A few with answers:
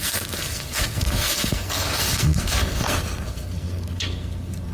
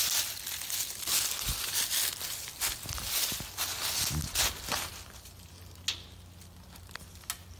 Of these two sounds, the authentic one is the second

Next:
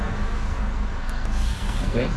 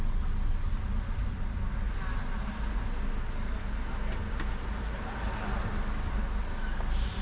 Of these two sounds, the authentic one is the second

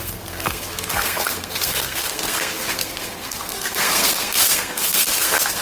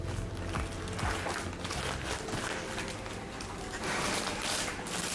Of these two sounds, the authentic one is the second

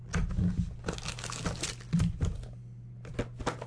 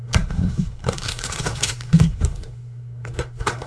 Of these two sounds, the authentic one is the first